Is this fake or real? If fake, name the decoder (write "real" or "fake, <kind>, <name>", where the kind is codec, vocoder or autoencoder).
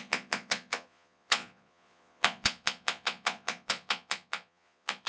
fake, vocoder, Vocos